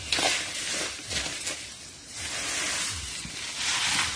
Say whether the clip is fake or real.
real